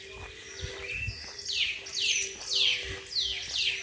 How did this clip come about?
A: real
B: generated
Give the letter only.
A